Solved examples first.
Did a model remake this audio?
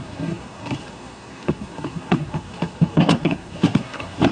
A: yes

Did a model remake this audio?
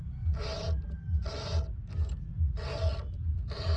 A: no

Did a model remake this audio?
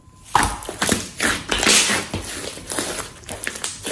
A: no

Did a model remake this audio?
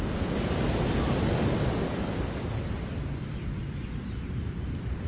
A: no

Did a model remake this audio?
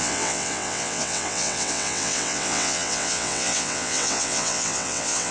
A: yes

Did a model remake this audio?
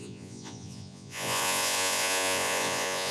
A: yes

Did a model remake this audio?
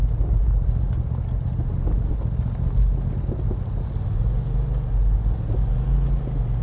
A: no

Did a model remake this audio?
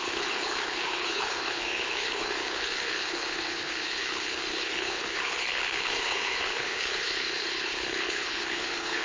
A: yes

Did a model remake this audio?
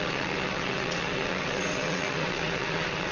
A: yes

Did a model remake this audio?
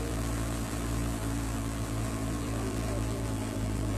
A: yes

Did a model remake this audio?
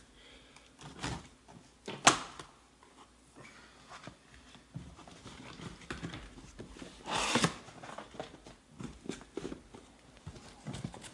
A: no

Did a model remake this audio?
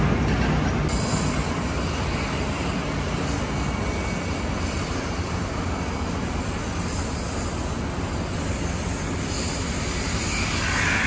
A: no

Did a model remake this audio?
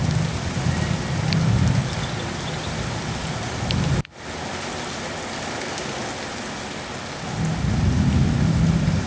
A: no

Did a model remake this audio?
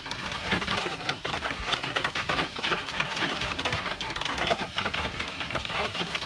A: yes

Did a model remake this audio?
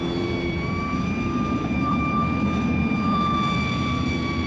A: yes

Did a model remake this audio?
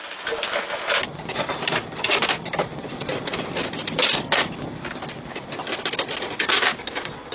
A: no